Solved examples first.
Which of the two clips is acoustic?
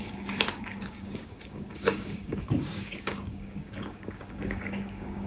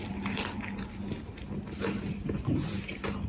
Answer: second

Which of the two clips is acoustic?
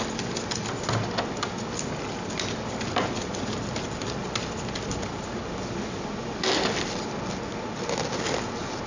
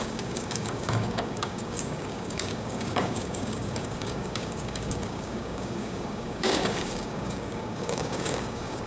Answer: first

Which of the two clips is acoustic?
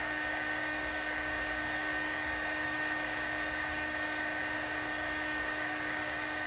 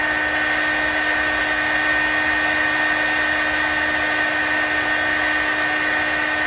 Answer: second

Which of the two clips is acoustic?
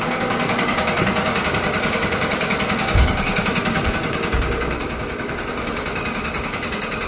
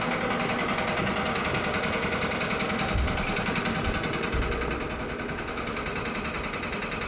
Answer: second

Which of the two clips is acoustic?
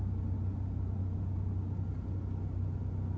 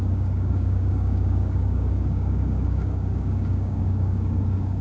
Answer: first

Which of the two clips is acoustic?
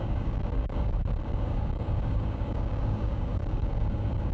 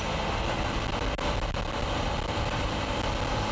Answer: second